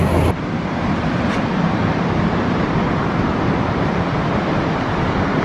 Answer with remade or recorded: recorded